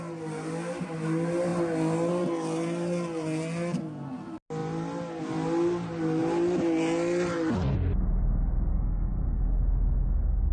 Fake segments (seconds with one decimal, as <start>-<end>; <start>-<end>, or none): 8.7-9.4